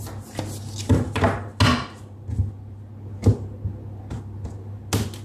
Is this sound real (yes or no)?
yes